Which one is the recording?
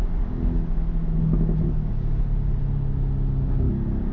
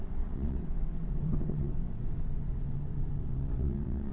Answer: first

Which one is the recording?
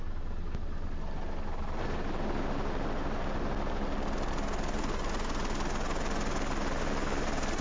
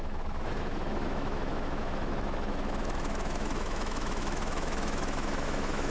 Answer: first